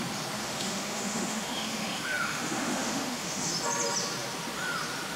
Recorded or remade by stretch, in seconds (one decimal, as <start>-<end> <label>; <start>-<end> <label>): 0.0-0.4 recorded; 0.4-3.5 remade; 3.5-5.2 recorded